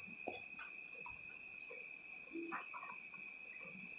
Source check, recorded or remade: recorded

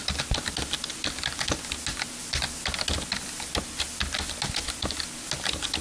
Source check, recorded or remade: recorded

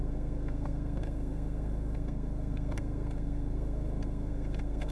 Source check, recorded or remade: remade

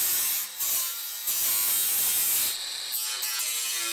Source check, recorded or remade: recorded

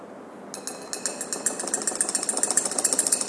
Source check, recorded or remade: recorded